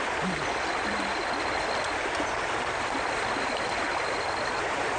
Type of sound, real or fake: fake